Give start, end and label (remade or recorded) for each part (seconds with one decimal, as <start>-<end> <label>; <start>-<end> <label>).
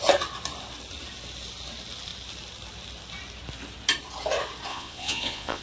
0.0-4.7 recorded; 4.7-5.6 remade